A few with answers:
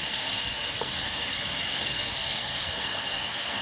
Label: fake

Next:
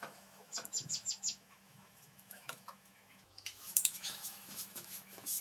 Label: fake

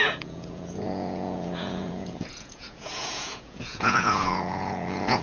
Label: fake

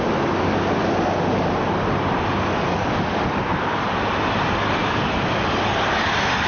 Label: real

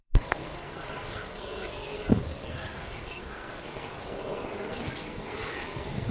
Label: fake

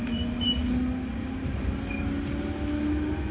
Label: real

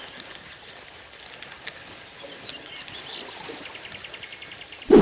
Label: real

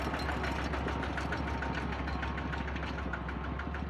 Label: real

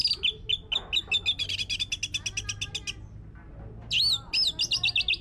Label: real